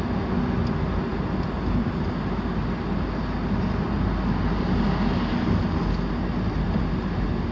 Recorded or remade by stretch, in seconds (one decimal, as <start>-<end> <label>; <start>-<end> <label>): 0.0-7.5 recorded